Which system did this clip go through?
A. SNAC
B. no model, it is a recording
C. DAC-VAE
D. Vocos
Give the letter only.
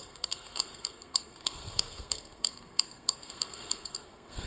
A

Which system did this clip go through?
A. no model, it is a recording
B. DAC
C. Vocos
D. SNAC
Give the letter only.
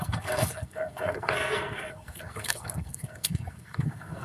D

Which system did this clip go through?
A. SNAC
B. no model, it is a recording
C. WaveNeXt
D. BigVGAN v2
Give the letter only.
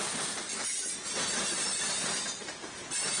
B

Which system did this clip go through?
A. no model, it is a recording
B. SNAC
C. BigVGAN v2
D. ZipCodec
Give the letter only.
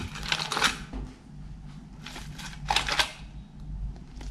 A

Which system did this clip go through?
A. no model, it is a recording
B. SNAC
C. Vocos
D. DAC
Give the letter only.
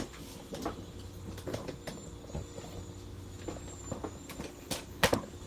A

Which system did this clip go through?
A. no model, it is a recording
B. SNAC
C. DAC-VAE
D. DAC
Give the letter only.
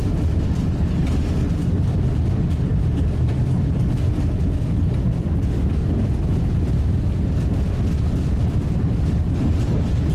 A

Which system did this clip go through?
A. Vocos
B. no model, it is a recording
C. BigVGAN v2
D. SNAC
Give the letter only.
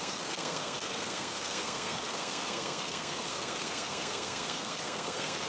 D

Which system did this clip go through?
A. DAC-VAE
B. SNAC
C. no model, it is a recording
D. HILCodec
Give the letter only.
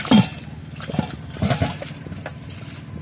C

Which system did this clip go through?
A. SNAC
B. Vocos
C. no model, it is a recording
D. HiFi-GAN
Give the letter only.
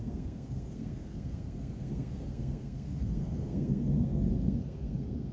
A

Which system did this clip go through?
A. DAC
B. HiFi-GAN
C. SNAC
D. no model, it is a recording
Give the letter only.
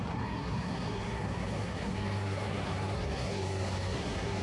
C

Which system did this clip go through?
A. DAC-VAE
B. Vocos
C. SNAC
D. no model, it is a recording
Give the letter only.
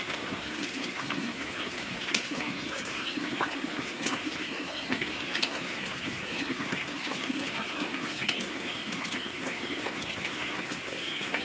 C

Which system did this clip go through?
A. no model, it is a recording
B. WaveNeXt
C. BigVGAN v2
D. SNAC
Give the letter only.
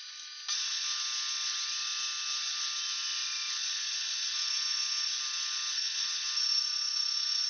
A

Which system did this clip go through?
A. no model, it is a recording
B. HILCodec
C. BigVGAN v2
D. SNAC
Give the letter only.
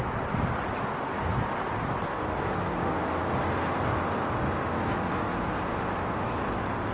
A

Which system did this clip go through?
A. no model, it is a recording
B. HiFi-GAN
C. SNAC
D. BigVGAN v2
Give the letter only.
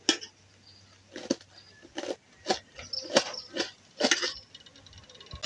A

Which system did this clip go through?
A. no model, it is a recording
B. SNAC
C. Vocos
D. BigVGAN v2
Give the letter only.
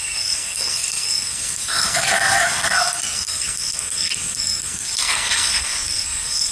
B